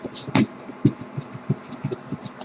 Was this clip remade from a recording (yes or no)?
no